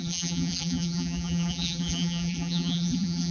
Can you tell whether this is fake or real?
fake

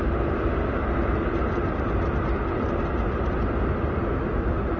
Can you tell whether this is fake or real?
real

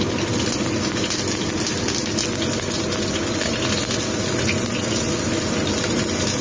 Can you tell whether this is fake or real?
real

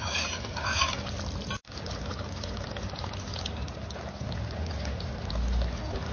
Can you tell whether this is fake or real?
real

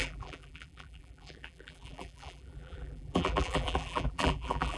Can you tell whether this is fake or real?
fake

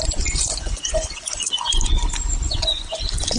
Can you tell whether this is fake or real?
fake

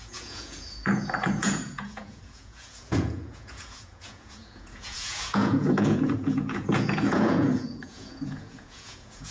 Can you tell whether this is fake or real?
fake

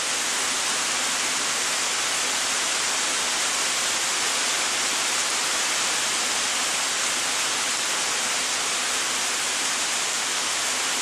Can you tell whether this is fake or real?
real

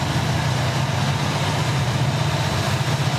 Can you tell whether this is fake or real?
real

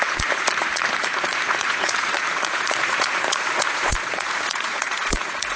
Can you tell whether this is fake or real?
fake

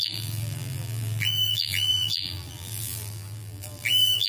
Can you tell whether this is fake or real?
fake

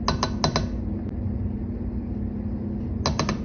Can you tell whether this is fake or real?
real